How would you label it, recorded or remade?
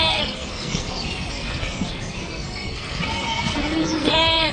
remade